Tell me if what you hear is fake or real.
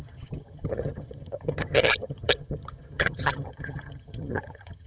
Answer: fake